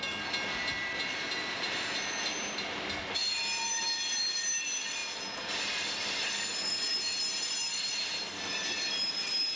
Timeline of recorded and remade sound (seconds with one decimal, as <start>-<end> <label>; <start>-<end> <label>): 0.0-9.6 recorded